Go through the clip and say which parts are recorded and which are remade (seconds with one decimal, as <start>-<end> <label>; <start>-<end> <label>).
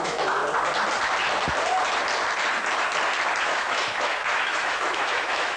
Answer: 0.0-0.4 remade; 0.4-3.4 recorded; 3.4-5.6 remade